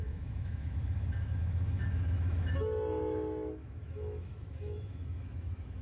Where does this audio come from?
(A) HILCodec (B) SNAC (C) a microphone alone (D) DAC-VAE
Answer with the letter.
D